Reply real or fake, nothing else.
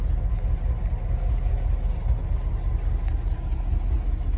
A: real